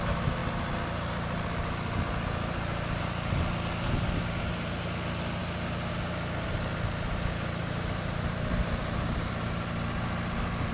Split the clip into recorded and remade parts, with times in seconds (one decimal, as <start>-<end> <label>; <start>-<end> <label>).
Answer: 0.0-7.6 recorded; 7.6-9.3 remade; 9.3-10.7 recorded